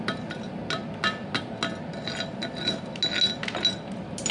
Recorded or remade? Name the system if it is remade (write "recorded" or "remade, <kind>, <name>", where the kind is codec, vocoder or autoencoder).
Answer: recorded